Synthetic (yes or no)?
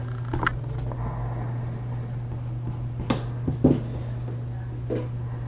no